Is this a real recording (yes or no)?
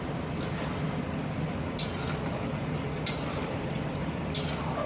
yes